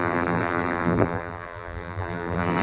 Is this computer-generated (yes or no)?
yes